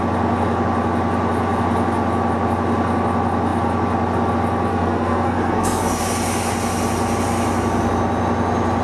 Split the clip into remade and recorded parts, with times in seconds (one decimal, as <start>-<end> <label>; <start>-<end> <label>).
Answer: 0.0-4.7 recorded; 4.7-6.0 remade; 6.0-8.8 recorded